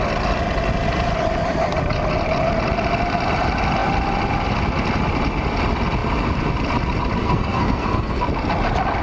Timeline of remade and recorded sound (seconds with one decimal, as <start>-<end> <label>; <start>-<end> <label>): 0.0-7.2 recorded; 7.2-8.2 remade; 8.2-9.0 recorded

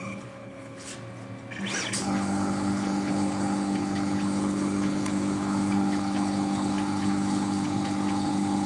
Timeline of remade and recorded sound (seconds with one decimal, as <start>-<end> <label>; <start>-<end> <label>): 0.0-0.9 remade; 0.9-1.9 recorded; 1.9-8.7 remade

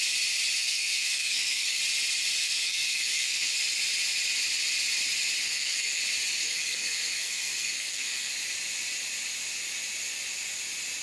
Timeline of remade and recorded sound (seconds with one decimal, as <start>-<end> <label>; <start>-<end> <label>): 0.0-0.6 recorded; 0.6-1.8 remade; 1.8-2.4 recorded; 2.4-3.5 remade; 3.5-5.4 recorded; 5.4-6.0 remade; 6.0-6.4 recorded; 6.4-8.3 remade; 8.3-11.0 recorded

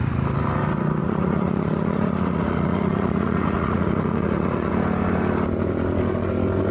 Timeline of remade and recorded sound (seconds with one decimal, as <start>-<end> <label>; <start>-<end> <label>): 0.0-1.0 recorded; 1.0-4.7 remade; 4.7-6.7 recorded